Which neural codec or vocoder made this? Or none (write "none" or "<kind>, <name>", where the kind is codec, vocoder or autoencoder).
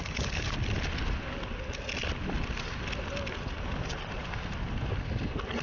none